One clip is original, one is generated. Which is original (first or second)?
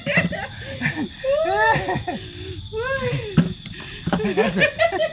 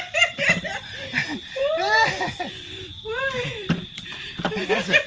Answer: first